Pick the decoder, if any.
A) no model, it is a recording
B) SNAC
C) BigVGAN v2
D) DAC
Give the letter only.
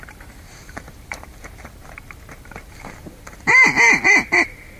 C